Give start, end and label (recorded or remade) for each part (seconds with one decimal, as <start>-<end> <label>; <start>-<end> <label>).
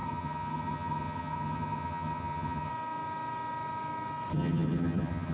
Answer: 0.0-2.7 remade; 2.7-4.3 recorded; 4.3-5.3 remade